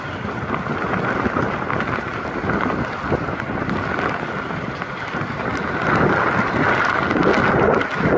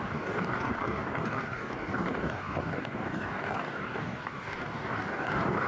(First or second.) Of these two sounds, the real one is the first